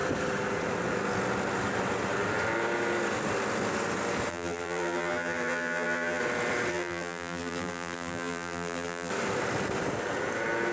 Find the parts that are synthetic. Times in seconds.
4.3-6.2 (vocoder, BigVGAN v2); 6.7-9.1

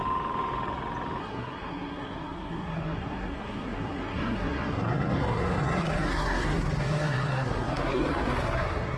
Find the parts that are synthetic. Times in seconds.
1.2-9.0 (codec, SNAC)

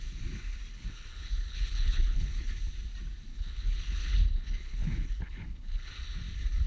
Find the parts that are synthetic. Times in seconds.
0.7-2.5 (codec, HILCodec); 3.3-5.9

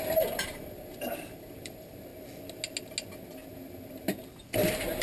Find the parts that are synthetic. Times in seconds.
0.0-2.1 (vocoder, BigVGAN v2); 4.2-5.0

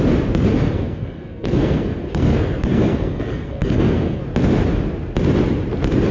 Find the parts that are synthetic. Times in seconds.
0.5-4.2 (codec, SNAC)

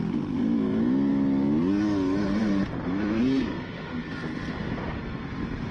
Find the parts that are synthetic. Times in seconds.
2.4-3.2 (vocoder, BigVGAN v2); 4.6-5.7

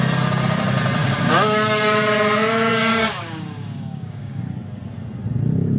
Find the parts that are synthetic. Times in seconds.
1.0-2.1 (codec, DAC); 2.7-4.4

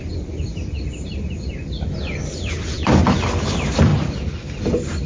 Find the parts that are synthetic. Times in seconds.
0.0-3.9 (vocoder, BigVGAN v2)